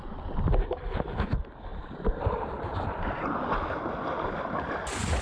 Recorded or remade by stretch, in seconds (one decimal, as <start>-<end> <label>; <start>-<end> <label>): 0.0-1.7 recorded; 1.7-4.7 remade; 4.7-5.2 recorded